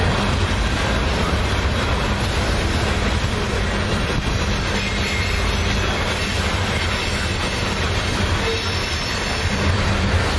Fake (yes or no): no